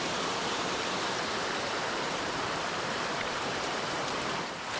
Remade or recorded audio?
remade